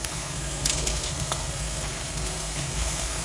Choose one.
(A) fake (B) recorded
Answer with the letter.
A